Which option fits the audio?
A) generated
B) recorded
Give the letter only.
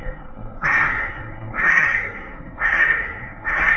A